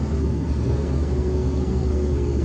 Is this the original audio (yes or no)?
no